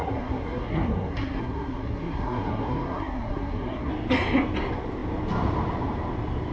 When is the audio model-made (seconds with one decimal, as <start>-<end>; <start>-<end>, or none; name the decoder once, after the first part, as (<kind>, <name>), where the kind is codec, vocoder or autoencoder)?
0.0-3.9 (codec, SNAC)